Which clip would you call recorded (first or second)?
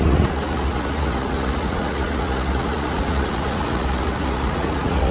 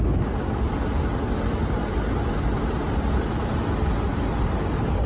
second